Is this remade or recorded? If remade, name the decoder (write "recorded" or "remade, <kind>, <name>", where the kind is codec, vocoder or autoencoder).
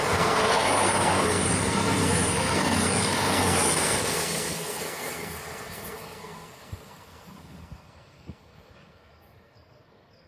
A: remade, codec, SNAC